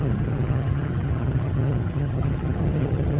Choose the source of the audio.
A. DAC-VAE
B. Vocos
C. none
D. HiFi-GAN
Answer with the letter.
D